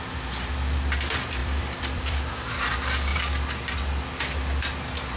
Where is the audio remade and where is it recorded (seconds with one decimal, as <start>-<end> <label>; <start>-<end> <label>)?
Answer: 0.0-1.4 recorded; 1.4-2.7 remade; 2.7-5.2 recorded